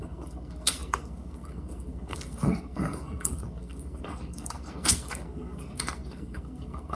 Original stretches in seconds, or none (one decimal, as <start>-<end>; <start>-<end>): none